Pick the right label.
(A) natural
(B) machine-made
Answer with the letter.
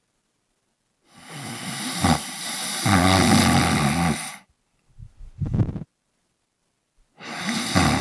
A